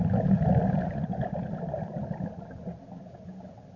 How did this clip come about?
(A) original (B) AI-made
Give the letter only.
A